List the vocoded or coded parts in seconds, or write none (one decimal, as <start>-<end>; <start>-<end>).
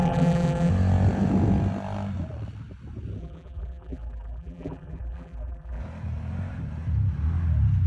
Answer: 0.0-0.7; 3.2-5.8